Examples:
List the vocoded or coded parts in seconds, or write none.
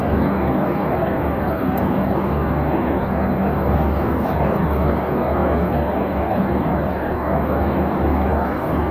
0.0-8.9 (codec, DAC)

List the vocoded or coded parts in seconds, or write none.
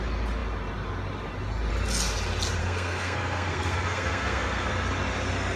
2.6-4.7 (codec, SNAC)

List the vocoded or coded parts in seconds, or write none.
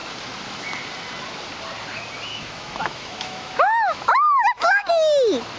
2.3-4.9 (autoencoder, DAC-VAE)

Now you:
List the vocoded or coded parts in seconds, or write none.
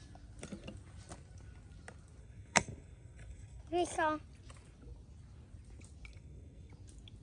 2.2-3.6 (codec, SNAC); 6.1-6.7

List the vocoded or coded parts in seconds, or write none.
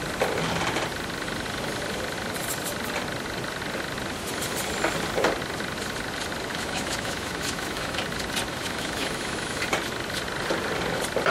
6.5-8.0 (autoencoder, DAC-VAE); 8.5-9.6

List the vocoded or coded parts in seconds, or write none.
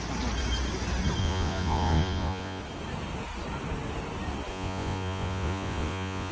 1.2-2.6 (vocoder, Vocos); 4.5-6.3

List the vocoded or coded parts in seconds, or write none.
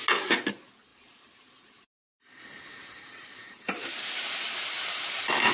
0.9-4.1 (vocoder, BigVGAN v2)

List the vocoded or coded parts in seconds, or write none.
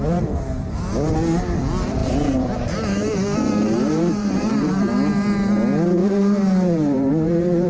2.0-4.7 (vocoder, BigVGAN v2); 6.0-7.7